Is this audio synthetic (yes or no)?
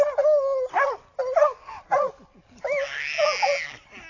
no